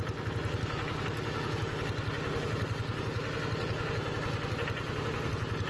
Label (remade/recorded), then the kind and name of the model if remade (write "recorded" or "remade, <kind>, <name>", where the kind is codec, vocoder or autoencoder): recorded